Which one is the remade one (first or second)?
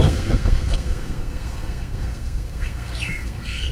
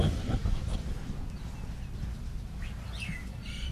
first